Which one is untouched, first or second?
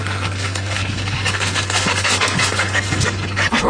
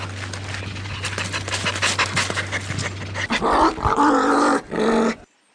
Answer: second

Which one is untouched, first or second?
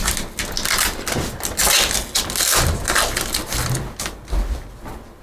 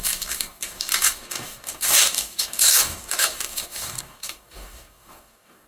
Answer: first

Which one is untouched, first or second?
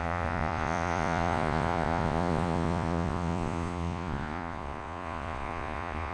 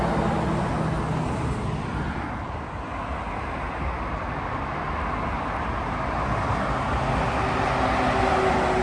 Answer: second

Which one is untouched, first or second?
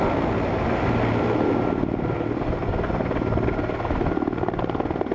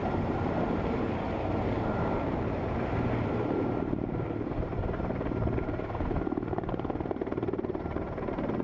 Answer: first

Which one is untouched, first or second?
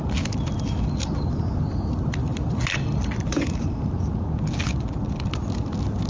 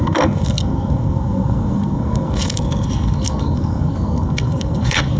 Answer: first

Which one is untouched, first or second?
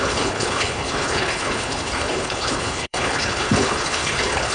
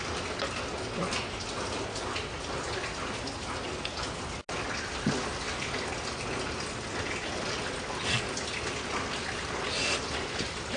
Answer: second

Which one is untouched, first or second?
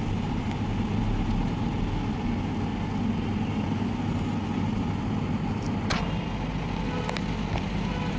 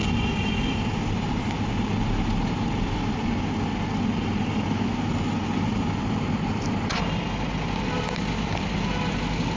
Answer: first